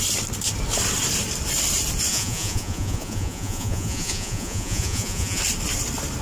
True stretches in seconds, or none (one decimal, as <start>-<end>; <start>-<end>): 0.0-2.1; 5.4-6.2